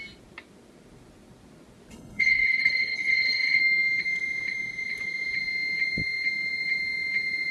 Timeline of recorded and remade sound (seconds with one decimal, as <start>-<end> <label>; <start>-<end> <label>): 0.0-1.9 recorded; 1.9-3.6 remade; 3.6-7.5 recorded